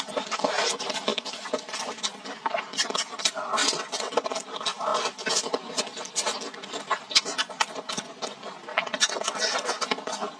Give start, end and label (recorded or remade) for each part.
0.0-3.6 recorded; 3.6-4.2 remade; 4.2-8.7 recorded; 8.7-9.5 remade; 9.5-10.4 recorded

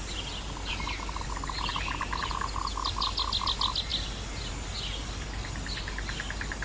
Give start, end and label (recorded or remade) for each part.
0.0-6.6 recorded

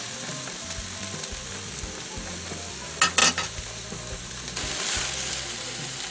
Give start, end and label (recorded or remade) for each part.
0.0-6.1 recorded

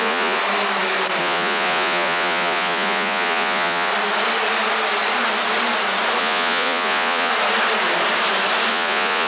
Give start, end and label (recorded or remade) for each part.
0.0-0.4 remade; 0.4-1.2 recorded; 1.2-3.9 remade; 3.9-6.2 recorded; 6.2-7.3 remade; 7.3-8.7 recorded; 8.7-9.3 remade